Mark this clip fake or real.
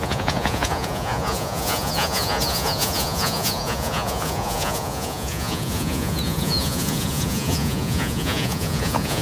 fake